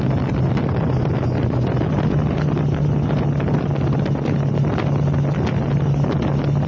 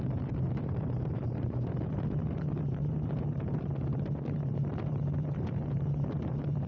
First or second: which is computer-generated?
second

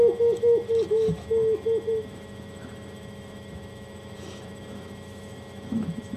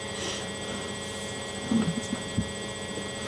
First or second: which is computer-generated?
first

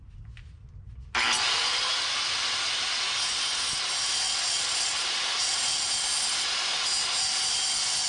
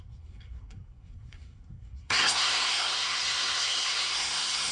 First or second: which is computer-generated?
second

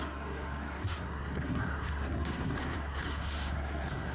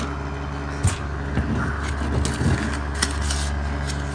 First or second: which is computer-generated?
first